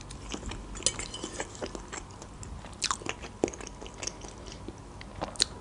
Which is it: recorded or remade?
recorded